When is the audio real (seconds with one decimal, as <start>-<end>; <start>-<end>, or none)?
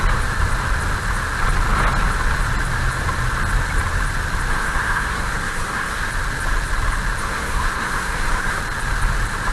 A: 0.0-4.5; 6.1-7.2; 8.6-9.5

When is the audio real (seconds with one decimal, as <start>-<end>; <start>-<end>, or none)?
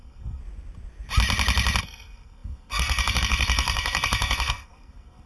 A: 0.4-1.8